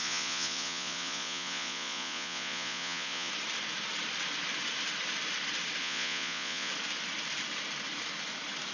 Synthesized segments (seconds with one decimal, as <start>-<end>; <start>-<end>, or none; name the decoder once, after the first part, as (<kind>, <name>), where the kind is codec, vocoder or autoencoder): 0.0-3.3 (vocoder, Vocos); 5.8-6.7